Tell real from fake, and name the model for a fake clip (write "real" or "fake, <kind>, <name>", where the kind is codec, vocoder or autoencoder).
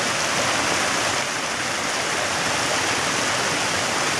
real